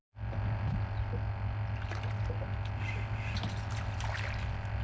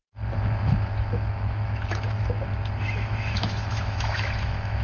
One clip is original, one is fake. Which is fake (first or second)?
second